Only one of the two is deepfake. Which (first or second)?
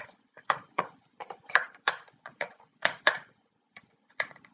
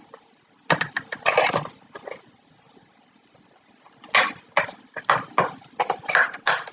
first